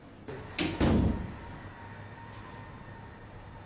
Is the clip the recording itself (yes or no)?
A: yes